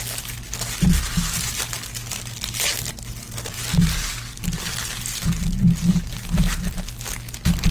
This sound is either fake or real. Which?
real